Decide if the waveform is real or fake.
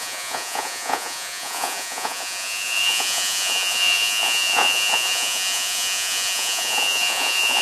fake